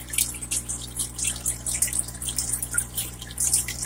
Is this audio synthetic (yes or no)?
yes